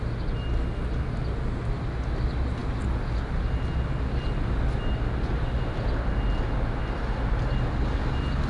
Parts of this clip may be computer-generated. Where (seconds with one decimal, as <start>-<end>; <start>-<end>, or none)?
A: none